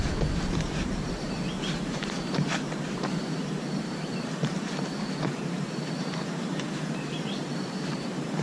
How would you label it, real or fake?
fake